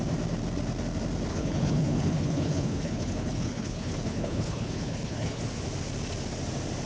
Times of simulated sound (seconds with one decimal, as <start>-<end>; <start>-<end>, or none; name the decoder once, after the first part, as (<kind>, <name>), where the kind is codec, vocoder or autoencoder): 1.3-5.4 (codec, HILCodec)